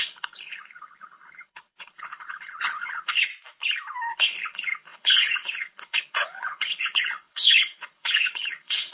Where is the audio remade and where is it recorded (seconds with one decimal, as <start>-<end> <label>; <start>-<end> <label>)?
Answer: 0.0-3.3 remade; 3.3-4.1 recorded; 4.1-8.9 remade